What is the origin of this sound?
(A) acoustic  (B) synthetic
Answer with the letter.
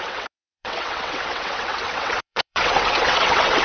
B